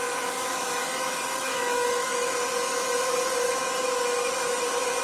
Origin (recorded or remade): remade